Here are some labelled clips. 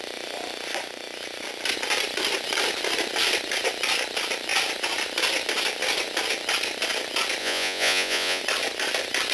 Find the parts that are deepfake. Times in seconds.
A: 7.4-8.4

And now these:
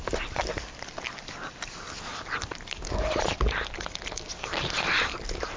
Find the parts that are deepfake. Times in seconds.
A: none

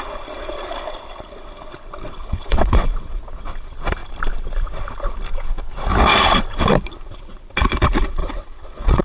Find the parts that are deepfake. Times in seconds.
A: 2.1-3.2; 8.2-9.0